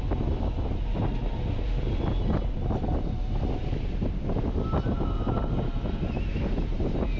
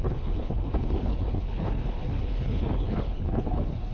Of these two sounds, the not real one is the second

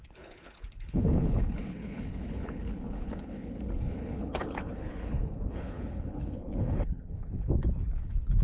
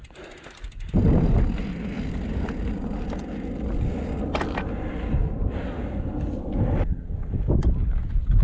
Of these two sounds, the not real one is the first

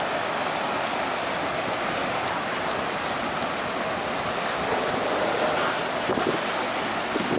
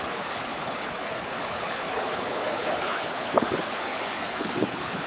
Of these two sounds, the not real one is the second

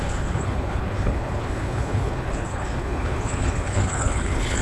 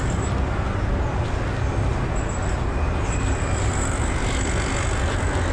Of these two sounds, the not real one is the first